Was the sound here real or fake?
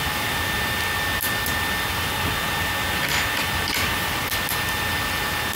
real